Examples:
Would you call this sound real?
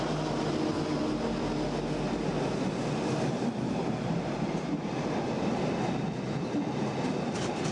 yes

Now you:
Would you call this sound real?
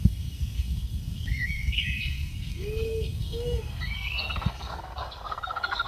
no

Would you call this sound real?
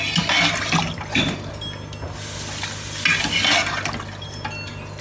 yes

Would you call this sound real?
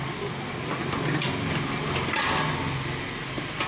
yes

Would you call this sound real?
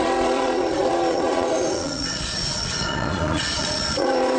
no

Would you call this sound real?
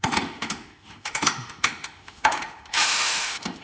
no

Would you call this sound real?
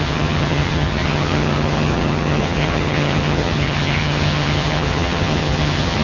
no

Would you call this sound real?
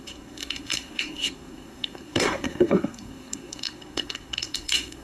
no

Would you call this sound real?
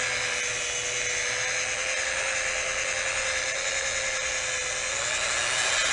yes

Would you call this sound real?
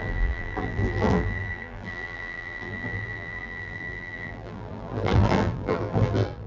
no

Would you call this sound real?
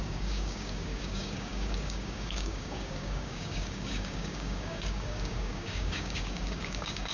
no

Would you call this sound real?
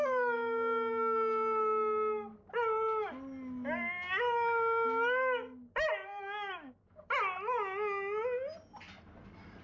yes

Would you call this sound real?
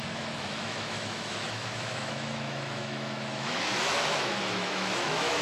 no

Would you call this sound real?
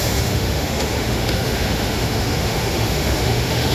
no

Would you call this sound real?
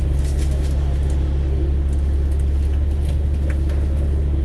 yes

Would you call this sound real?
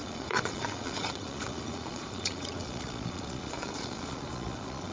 no